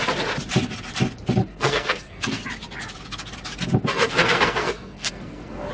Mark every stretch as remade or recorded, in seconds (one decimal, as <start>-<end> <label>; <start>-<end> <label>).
0.0-1.4 recorded; 1.4-2.4 remade; 2.4-3.9 recorded; 3.9-5.7 remade